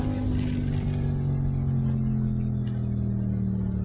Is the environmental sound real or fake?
real